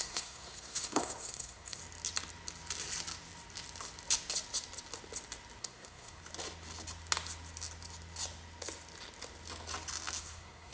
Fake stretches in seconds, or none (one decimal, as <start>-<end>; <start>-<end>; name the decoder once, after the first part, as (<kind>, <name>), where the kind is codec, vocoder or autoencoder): 0.0-1.8 (codec, SNAC); 5.6-6.2; 10.2-10.7